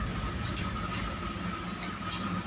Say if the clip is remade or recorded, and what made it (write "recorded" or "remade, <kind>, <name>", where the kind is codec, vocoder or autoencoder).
recorded